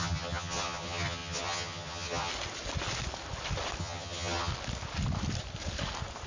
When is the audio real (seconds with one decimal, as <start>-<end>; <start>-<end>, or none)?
2.3-3.8; 4.5-6.3